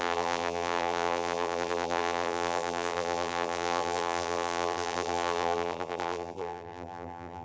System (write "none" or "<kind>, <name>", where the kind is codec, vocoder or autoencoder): vocoder, BigVGAN v2